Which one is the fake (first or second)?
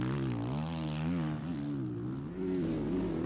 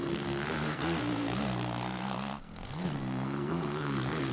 second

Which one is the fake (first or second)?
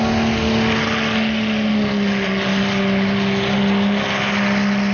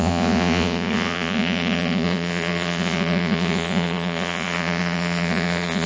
second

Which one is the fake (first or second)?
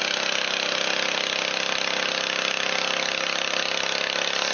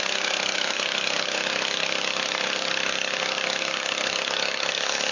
second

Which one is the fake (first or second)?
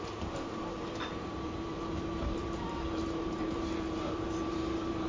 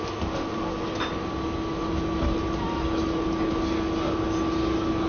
first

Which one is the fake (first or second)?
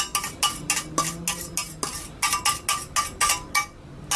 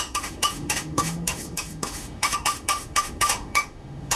second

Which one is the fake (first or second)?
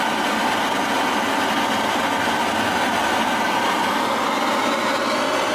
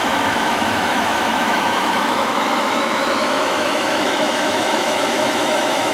second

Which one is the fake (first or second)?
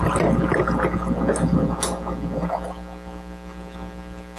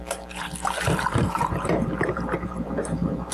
second